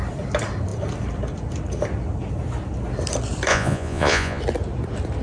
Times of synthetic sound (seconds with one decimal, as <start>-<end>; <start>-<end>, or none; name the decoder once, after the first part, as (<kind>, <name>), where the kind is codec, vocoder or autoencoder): 3.5-4.4 (vocoder, Vocos)